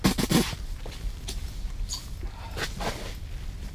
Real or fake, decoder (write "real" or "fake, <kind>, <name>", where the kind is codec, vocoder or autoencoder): real